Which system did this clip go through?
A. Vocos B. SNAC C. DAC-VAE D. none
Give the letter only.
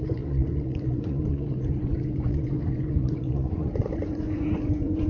A